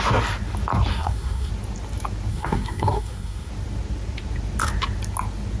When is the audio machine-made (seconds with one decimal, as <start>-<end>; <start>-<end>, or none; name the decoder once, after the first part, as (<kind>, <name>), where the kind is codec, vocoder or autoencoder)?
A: 0.9-1.5 (codec, SNAC); 2.3-3.5